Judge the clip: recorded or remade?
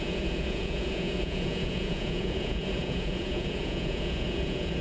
remade